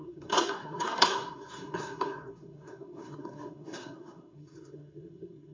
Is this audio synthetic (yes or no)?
yes